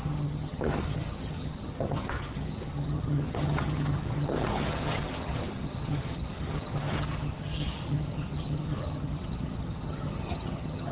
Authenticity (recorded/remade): remade